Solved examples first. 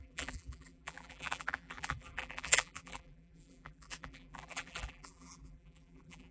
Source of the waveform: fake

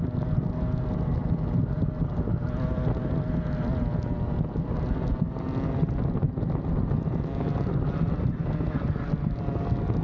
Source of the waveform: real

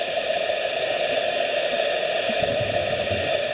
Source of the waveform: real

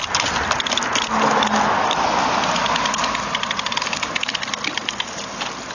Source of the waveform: real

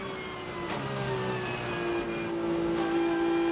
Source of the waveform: real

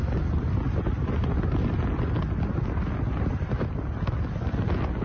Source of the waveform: real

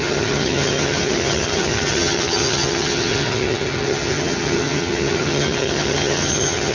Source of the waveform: fake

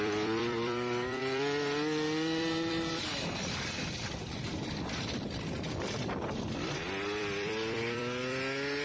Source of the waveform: fake